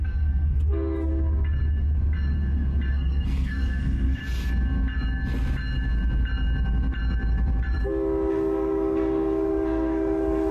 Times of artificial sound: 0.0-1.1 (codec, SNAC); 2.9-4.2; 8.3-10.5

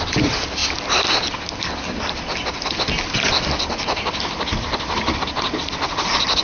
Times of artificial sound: 0.0-0.6 (vocoder, BigVGAN v2); 1.8-2.3; 4.6-6.4

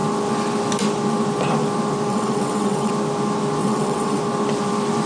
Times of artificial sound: 2.1-2.9 (vocoder, WaveNeXt); 3.6-4.2